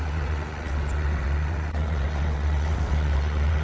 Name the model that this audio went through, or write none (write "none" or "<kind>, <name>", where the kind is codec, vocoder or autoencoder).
vocoder, WaveNeXt